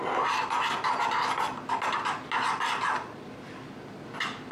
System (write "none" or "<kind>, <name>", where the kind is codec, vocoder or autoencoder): none